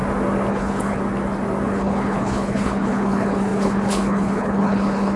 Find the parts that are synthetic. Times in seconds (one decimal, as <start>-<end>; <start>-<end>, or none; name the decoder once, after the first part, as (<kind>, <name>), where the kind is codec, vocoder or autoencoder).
0.5-1.0 (codec, HILCodec); 1.7-5.2